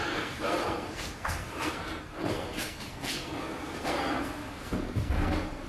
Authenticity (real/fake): fake